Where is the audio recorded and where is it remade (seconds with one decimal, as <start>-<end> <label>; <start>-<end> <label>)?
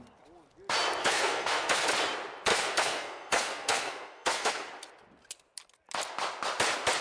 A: 0.0-1.0 recorded; 1.0-1.9 remade; 1.9-2.5 recorded; 2.5-4.5 remade; 4.5-7.0 recorded